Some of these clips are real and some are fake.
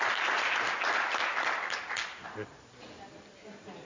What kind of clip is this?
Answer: real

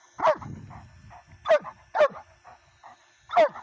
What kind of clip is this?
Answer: real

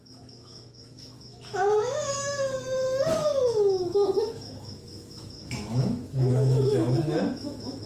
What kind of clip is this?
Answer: fake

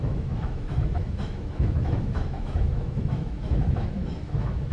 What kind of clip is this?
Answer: fake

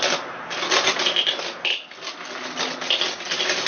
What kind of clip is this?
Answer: real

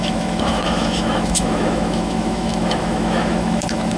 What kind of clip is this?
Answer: fake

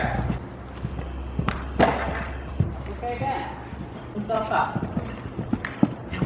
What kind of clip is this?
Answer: real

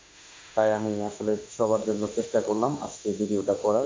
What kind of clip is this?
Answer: fake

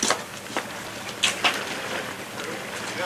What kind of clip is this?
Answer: real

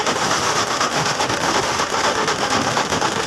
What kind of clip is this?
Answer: fake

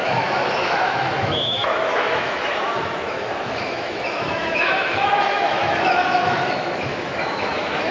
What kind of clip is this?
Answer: fake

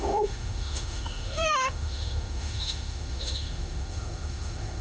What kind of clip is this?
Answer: fake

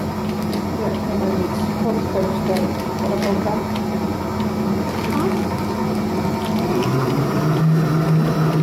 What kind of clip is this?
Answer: real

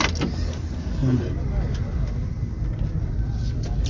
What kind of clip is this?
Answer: real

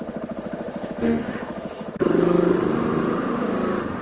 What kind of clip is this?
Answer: fake